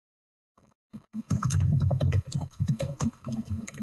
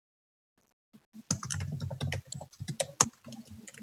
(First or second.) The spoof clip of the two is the first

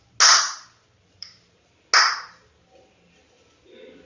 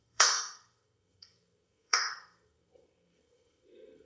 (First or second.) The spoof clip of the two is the second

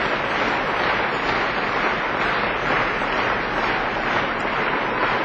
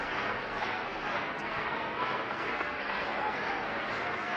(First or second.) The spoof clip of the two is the second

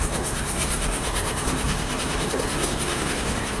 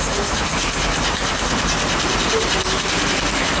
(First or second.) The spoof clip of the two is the first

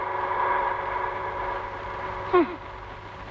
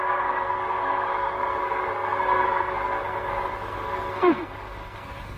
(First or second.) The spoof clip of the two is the second